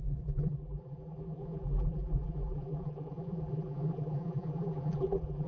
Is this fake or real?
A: fake